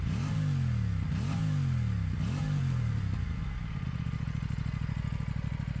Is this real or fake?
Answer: real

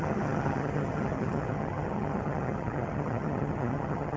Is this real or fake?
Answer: fake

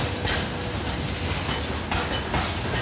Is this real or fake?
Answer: real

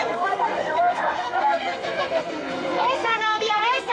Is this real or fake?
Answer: fake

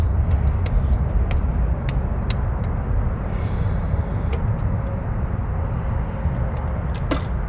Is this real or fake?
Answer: real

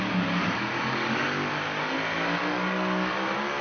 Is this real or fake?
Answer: fake